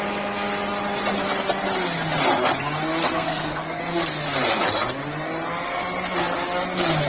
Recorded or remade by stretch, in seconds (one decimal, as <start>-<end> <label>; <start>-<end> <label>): 0.0-3.1 recorded; 3.1-3.8 remade; 3.8-7.1 recorded

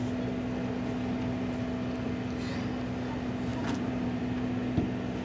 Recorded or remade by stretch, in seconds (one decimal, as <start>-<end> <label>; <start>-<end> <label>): 0.0-3.5 recorded; 3.5-4.2 remade; 4.2-5.2 recorded